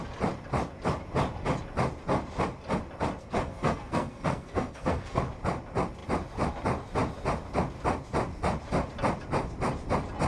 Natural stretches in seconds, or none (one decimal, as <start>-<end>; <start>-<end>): 0.0-3.2; 5.2-10.3